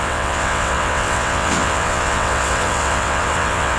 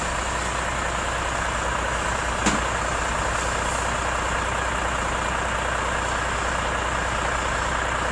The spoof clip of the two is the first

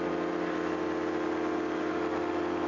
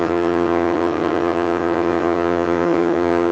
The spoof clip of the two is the second